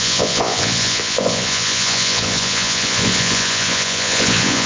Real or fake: fake